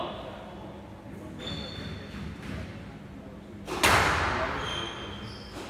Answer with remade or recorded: recorded